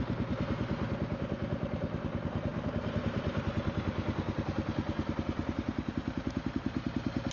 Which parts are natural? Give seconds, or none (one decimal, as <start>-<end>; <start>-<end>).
0.0-2.5; 5.9-7.3